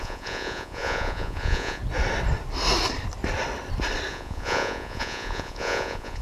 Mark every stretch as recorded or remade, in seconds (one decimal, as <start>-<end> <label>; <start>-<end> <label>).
0.0-1.8 remade; 1.8-4.1 recorded; 4.1-6.2 remade

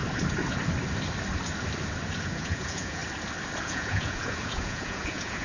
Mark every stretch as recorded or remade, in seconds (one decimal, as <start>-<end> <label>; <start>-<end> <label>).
0.0-2.3 recorded; 2.3-3.0 remade; 3.0-3.6 recorded; 3.6-5.4 remade

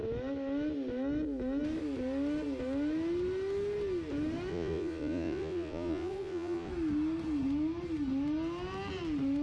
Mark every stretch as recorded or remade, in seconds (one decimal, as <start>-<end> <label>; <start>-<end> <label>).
0.0-4.5 recorded; 4.5-6.7 remade; 6.7-9.4 recorded

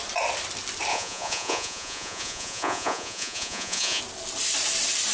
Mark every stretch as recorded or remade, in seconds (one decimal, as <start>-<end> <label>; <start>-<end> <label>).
0.0-0.9 recorded; 0.9-4.0 remade; 4.0-5.1 recorded

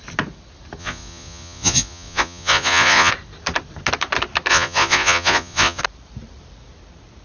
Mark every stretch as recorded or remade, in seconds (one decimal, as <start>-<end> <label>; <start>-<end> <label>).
0.0-0.8 recorded; 0.8-3.1 remade; 3.1-4.5 recorded; 4.5-5.8 remade; 5.8-7.2 recorded